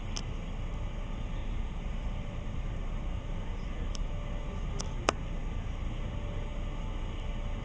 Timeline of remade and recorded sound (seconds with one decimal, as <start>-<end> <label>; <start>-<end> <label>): 0.0-1.4 recorded; 1.4-4.1 remade; 4.1-7.6 recorded